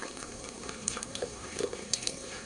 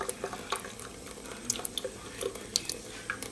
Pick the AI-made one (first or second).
first